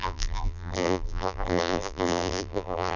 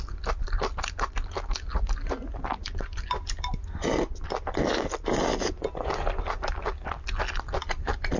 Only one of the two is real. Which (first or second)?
second